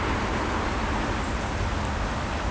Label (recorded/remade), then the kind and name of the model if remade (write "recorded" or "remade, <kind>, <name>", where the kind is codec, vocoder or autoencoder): recorded